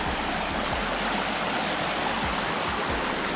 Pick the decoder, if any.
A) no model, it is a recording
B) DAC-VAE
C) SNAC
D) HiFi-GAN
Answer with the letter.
A